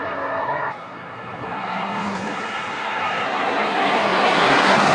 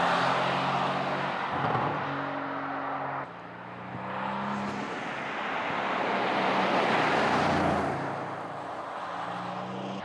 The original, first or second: second